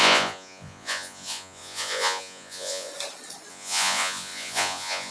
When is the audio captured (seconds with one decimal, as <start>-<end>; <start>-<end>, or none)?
2.9-3.5